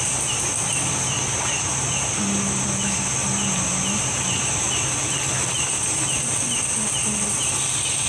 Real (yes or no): no